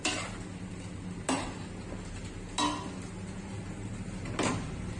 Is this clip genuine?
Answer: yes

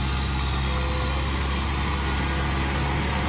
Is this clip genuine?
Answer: yes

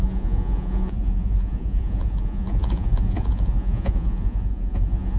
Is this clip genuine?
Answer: no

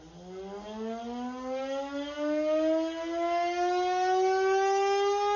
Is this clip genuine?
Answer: yes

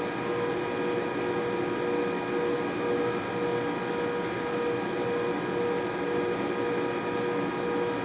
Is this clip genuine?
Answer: yes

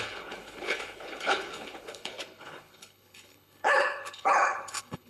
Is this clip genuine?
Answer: no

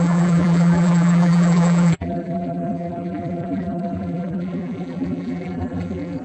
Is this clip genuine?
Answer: no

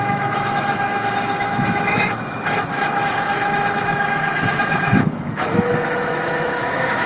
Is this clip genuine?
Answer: no